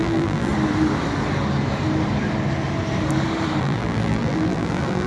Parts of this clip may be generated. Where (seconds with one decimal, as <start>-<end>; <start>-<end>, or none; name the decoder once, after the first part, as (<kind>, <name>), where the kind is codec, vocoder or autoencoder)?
0.0-0.5 (vocoder, BigVGAN v2); 3.6-5.1

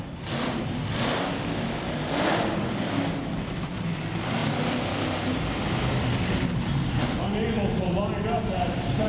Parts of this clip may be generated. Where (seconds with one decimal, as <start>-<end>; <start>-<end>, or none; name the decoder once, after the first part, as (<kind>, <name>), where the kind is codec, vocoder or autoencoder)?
none